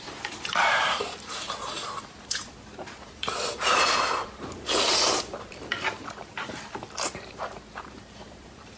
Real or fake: fake